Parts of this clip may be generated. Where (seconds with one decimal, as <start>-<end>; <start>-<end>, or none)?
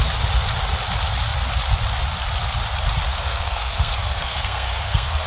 3.1-5.3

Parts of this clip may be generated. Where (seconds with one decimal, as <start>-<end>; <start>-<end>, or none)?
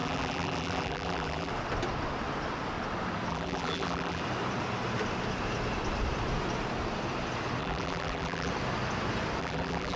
0.0-1.5; 3.3-4.2; 7.6-8.5; 9.4-10.0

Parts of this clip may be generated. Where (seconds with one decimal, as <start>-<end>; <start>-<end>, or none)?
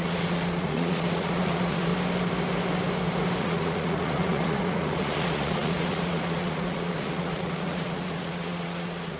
0.0-1.9; 3.4-9.2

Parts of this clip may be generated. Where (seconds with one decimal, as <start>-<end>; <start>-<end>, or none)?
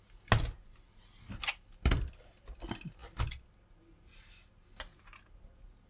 none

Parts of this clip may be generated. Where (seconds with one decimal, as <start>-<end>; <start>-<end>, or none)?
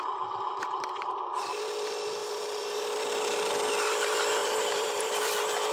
2.2-2.8; 4.4-5.1